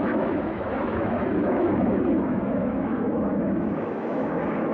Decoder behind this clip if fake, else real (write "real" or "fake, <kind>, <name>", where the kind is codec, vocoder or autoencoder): fake, autoencoder, DAC-VAE